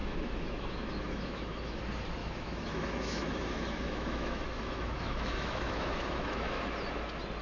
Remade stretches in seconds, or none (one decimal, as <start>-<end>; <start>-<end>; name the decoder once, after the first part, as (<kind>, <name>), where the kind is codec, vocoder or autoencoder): 0.0-1.8 (autoencoder, DAC-VAE); 2.2-6.6